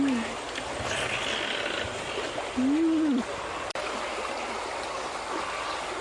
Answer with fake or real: real